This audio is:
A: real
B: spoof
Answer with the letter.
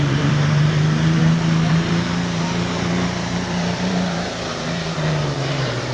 B